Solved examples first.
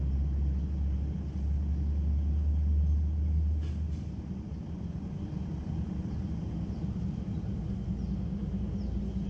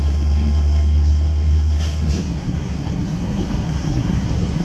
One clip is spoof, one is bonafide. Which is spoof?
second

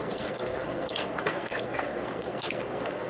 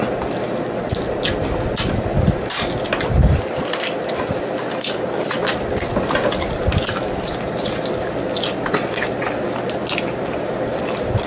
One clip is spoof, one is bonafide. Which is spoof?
first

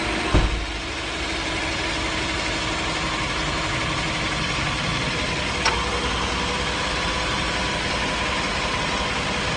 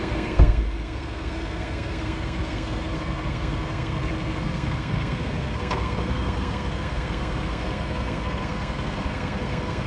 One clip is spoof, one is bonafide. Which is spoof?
second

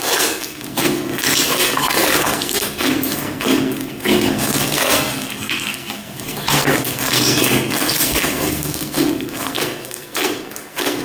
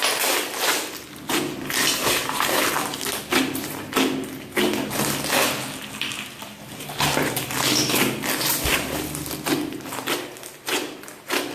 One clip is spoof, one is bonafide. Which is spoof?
first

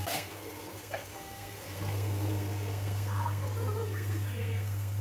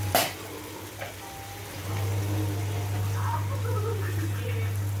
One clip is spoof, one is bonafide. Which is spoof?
first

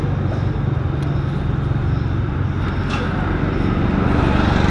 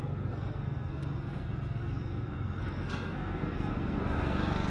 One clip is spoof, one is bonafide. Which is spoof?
second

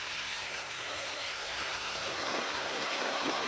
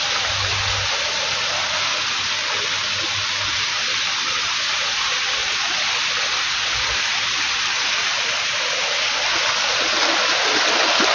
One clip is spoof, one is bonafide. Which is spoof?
first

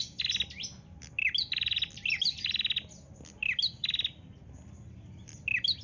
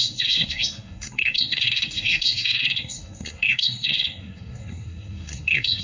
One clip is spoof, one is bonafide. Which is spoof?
second